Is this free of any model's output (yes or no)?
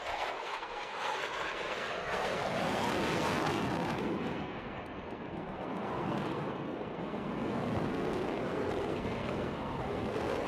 no